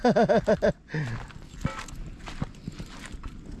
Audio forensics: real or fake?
real